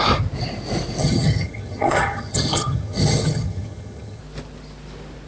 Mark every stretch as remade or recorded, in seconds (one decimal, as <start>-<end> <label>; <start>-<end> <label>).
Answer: 0.0-1.0 recorded; 1.0-4.2 remade; 4.2-5.3 recorded